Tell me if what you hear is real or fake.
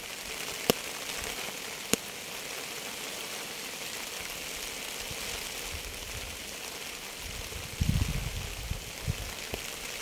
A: real